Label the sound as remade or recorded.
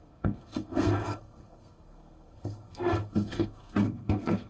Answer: remade